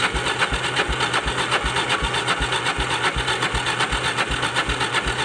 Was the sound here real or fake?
real